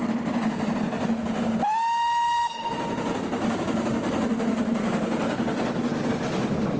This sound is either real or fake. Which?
real